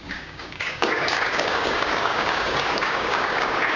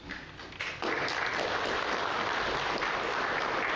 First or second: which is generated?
first